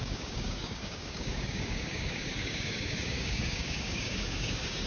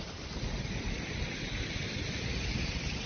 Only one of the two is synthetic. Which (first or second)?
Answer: first